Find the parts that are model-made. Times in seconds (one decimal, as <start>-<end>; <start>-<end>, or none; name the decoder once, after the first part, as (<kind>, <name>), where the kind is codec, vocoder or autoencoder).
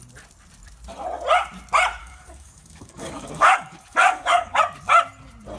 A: 2.0-4.6 (codec, DAC)